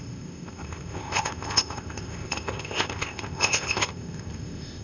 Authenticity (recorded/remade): remade